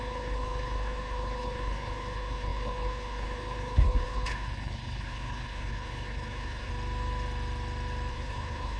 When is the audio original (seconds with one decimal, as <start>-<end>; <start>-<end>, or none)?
6.7-8.1